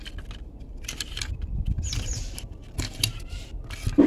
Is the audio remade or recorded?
recorded